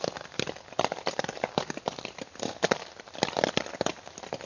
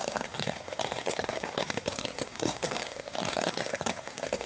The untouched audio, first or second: first